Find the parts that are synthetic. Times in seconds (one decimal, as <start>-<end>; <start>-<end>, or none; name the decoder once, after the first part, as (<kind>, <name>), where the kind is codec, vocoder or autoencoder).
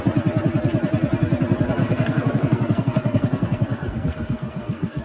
1.8-5.0 (codec, SNAC)